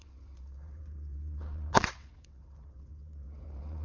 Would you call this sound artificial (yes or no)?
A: yes